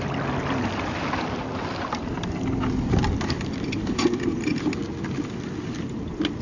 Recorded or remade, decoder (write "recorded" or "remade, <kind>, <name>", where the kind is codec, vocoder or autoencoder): recorded